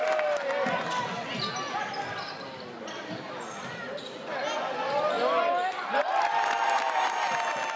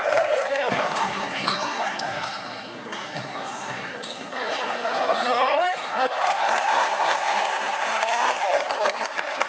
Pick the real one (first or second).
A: first